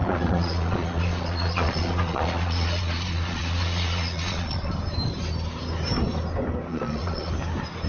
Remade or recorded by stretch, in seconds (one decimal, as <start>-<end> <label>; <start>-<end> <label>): 0.0-4.7 remade; 4.7-6.7 recorded; 6.7-7.3 remade; 7.3-7.9 recorded